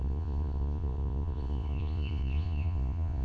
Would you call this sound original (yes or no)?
no